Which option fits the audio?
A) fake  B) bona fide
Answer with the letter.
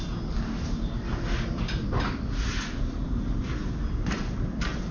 B